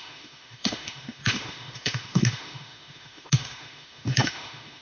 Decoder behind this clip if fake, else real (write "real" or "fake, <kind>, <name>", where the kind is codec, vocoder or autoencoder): fake, autoencoder, DAC-VAE